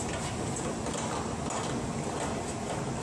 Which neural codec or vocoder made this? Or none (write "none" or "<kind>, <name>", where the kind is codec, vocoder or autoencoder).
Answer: none